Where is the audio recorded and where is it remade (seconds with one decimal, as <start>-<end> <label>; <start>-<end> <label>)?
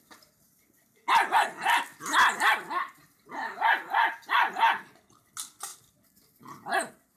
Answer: 0.0-7.2 recorded